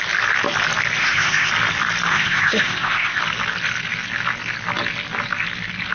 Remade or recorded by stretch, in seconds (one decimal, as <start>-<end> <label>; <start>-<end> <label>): 0.0-1.0 recorded; 1.0-1.5 remade; 1.5-2.1 recorded; 2.1-3.2 remade; 3.2-5.9 recorded

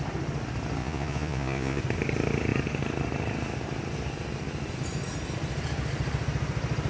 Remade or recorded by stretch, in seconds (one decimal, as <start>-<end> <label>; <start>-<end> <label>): 0.0-0.8 recorded; 0.8-1.8 remade; 1.8-6.9 recorded

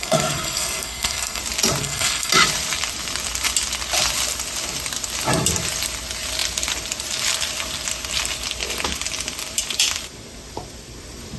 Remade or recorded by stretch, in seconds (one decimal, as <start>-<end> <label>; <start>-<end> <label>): 0.0-1.4 remade; 1.4-1.8 recorded; 1.8-2.3 remade; 2.3-11.4 recorded

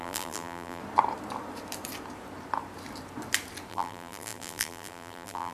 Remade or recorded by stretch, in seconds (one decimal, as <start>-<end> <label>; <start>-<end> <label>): 0.0-0.8 remade; 0.8-3.7 recorded; 3.7-5.5 remade

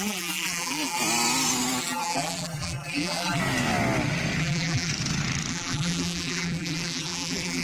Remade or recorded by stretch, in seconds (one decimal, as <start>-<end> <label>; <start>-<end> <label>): 0.0-1.0 remade; 1.0-1.8 recorded; 1.8-3.4 remade; 3.4-4.4 recorded; 4.4-4.9 remade; 4.9-5.5 recorded; 5.5-7.6 remade